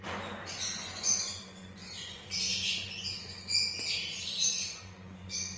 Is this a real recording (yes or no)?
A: no